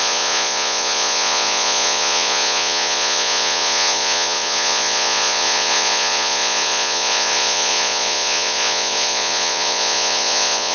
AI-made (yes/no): yes